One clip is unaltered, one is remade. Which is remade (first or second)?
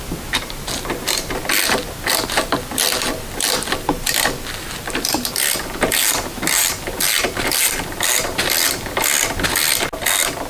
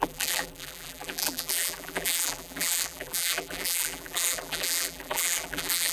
second